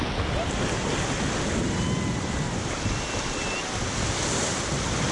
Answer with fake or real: real